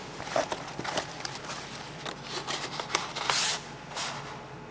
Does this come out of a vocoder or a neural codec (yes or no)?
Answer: no